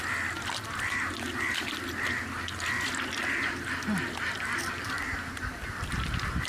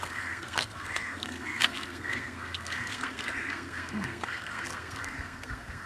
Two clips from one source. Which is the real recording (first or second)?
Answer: first